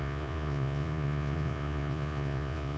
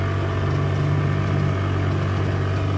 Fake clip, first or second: first